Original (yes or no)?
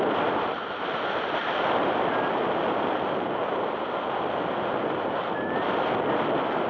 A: yes